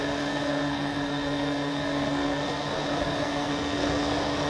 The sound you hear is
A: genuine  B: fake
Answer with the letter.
B